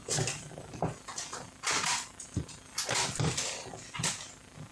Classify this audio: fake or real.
real